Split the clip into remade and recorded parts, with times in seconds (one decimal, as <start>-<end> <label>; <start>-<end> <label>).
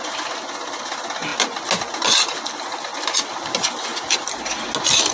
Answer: 0.0-5.1 recorded